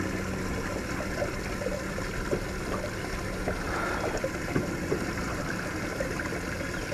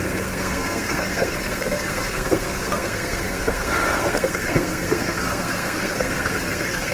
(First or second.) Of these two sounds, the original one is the first